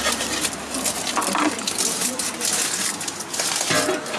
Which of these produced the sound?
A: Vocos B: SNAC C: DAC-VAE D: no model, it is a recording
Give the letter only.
D